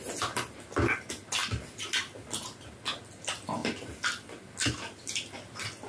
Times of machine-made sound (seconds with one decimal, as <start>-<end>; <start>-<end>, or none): none

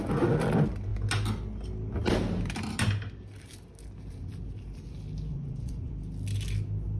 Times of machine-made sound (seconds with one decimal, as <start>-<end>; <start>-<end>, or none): 5.3-5.9

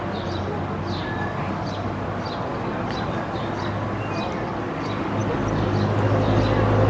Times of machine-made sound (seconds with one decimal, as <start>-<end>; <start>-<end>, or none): none

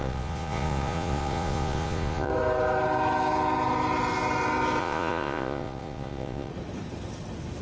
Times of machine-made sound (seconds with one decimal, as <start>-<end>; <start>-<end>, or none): 0.0-2.3; 4.8-6.5